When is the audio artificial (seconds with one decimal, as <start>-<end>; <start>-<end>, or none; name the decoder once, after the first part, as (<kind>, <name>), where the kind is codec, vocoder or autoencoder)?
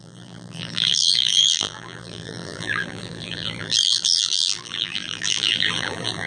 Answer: 0.0-6.3 (vocoder, BigVGAN v2)